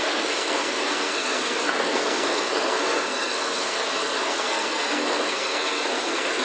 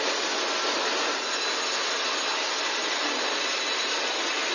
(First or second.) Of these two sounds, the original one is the second